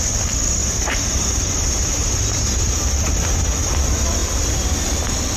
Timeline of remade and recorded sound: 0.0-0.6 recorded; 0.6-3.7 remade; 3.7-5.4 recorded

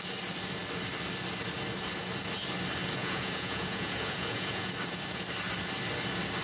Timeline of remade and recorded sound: 0.0-3.0 recorded; 3.0-4.7 remade; 4.7-6.4 recorded